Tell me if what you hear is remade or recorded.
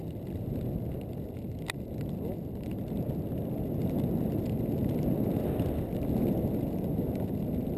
recorded